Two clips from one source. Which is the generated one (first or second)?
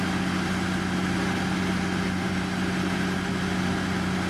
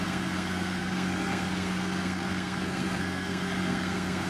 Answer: second